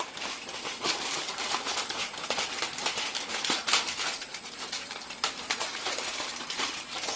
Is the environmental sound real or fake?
fake